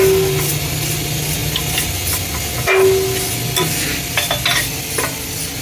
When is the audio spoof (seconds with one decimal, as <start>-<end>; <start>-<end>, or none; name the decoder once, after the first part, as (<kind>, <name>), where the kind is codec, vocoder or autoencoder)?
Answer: none